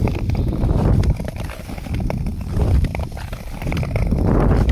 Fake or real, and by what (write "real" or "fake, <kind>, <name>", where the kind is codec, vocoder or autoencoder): real